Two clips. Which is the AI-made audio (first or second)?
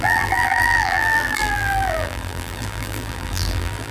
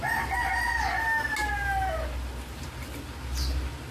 first